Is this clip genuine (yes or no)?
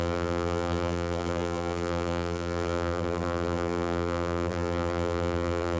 no